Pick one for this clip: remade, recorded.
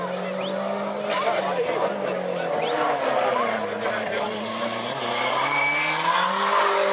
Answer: recorded